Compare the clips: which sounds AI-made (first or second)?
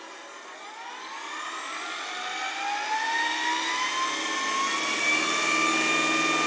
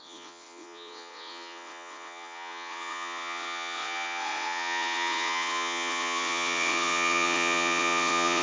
second